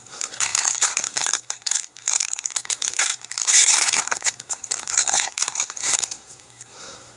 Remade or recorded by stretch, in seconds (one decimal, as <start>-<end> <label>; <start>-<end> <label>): 0.0-7.2 remade